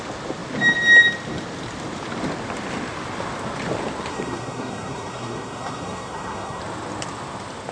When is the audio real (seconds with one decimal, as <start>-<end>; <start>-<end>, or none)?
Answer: 0.0-4.1; 6.6-7.7